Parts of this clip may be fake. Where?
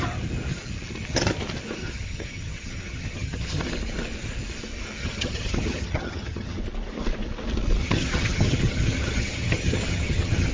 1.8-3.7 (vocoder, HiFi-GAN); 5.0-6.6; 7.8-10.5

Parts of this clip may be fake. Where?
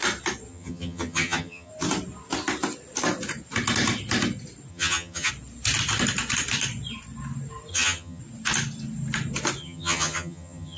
0.5-1.7 (vocoder, HiFi-GAN); 4.7-5.3; 7.7-8.2; 9.6-10.8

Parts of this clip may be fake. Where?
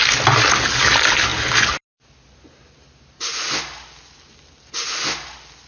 none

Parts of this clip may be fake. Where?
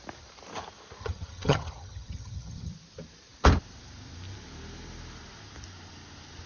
1.0-2.7 (vocoder, HiFi-GAN)